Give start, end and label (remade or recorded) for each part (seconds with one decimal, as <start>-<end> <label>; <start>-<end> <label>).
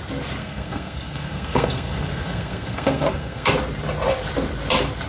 0.0-0.4 recorded; 0.4-3.5 remade; 3.5-5.1 recorded